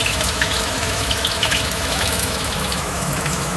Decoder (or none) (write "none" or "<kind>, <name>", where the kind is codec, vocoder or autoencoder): autoencoder, DAC-VAE